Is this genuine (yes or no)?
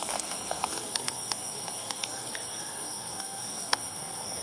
no